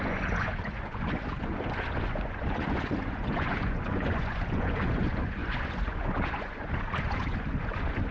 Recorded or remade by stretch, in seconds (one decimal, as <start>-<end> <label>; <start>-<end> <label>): 0.0-8.1 remade